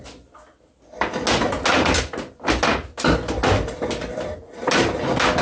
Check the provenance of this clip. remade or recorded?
recorded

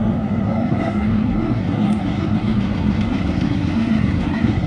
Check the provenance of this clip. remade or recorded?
remade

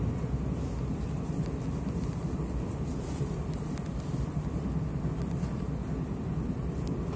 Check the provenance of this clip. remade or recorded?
recorded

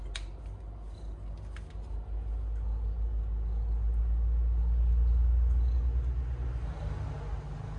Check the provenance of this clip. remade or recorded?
recorded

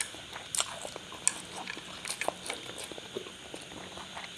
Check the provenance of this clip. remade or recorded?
recorded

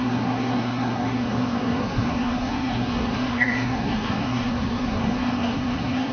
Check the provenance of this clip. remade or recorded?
remade